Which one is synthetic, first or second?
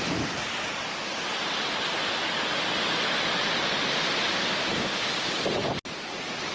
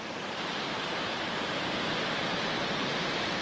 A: second